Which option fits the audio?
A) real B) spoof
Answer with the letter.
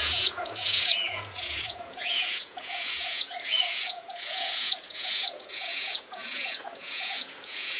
B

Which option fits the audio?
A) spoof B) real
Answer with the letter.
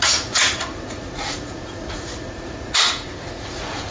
A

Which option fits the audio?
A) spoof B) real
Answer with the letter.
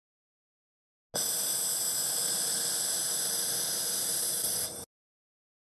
B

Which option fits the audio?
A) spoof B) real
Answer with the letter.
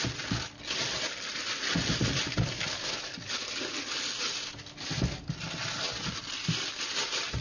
B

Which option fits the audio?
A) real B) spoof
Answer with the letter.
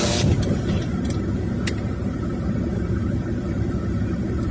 A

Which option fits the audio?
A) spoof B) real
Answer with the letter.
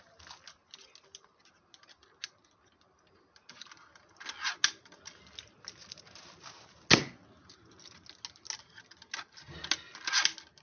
B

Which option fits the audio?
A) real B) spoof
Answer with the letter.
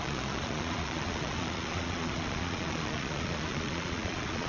B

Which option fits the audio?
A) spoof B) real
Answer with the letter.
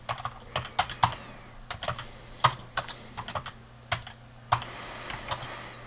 B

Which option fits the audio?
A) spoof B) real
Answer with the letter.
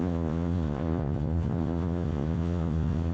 A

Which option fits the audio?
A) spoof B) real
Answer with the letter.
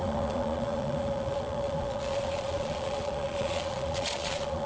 A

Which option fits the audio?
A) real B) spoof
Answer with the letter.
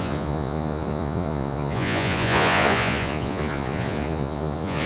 B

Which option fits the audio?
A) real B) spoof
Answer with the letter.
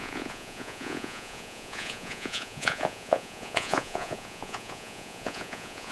B